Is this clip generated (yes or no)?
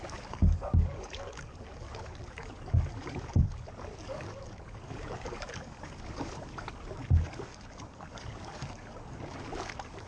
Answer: yes